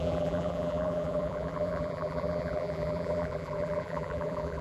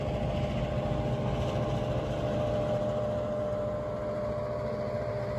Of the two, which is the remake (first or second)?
first